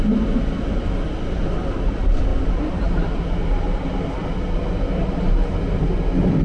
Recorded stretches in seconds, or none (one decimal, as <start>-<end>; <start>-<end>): 0.0-6.4